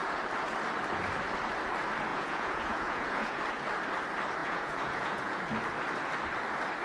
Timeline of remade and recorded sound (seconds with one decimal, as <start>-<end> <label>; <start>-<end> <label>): 0.0-2.1 recorded; 2.1-3.4 remade; 3.4-4.4 recorded; 4.4-5.4 remade; 5.4-6.8 recorded